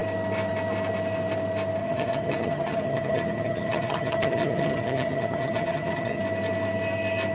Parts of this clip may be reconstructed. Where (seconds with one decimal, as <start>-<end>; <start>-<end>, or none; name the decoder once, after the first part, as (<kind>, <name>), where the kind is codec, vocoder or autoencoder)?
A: 1.8-6.2 (vocoder, HiFi-GAN)